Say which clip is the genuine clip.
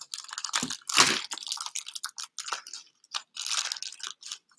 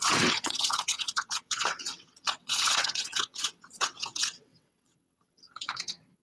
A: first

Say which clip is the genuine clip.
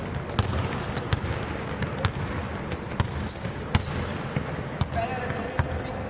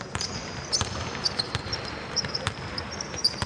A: first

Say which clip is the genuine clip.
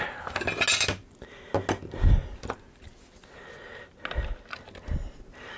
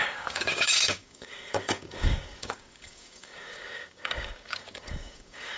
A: first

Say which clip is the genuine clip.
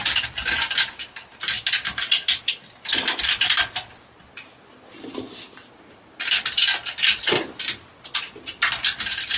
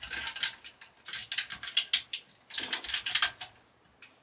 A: second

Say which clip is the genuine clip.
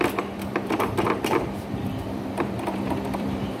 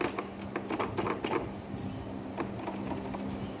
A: second